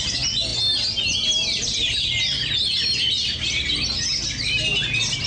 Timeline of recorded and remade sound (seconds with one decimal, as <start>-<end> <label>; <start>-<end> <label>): 0.0-5.3 recorded